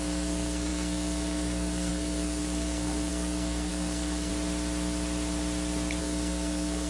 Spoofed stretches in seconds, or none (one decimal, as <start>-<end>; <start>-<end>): 0.0-4.3; 6.0-6.9